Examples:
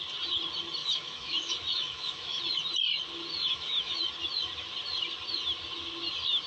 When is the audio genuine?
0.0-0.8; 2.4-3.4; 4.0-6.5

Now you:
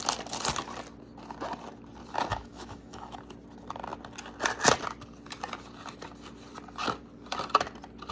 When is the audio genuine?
0.0-2.3; 3.2-8.1

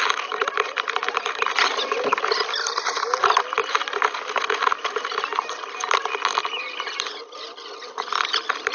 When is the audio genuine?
0.0-8.7

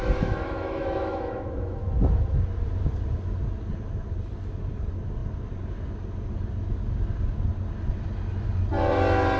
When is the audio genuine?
1.8-9.4

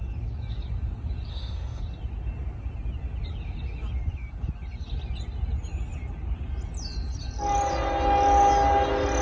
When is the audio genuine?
0.0-1.3; 1.8-9.2

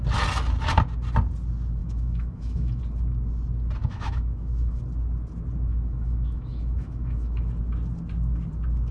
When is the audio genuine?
0.0-1.8; 2.8-3.8; 4.8-5.7; 7.4-8.9

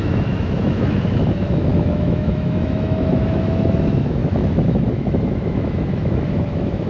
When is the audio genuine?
none

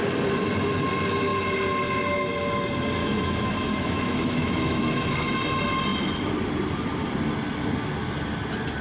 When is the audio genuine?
0.0-3.0; 5.3-8.8